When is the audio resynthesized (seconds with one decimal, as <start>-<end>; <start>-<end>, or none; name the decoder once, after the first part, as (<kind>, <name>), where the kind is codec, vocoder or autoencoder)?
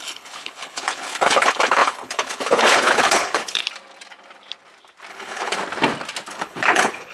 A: 0.0-3.6 (codec, HILCodec); 5.1-5.6; 6.3-7.1